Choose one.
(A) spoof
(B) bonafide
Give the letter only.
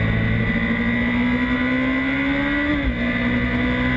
B